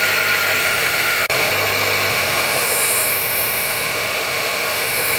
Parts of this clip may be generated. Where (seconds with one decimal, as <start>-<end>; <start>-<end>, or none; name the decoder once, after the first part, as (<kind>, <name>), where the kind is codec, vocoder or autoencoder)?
0.6-1.5 (autoencoder, DAC-VAE); 2.1-5.2